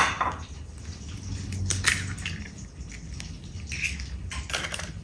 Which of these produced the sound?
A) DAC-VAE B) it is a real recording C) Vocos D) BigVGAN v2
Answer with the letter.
B